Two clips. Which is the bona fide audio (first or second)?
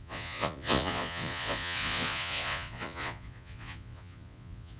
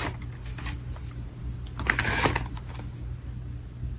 second